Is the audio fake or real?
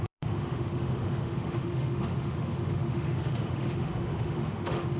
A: fake